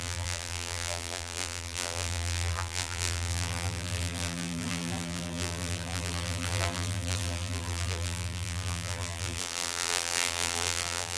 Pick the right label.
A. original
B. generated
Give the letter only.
B